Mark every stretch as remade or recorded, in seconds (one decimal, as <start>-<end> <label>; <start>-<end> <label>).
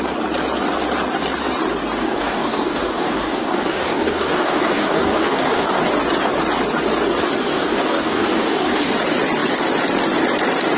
0.0-2.0 recorded; 2.0-5.8 remade; 5.8-7.5 recorded; 7.5-8.9 remade; 8.9-10.8 recorded